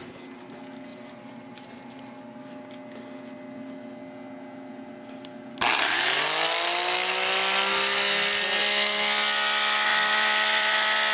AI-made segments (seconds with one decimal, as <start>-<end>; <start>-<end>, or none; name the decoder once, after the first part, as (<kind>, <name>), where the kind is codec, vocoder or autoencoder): 0.9-1.5 (vocoder, BigVGAN v2); 9.9-10.7